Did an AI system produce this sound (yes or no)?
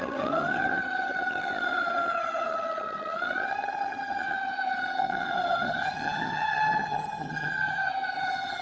yes